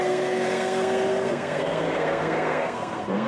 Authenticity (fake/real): fake